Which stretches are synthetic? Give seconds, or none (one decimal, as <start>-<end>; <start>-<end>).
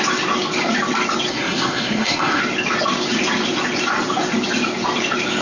1.3-2.4